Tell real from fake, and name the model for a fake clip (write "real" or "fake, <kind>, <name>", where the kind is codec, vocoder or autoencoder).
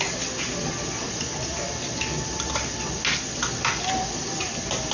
real